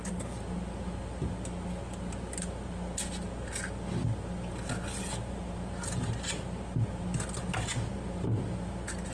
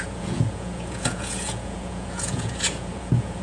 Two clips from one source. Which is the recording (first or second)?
first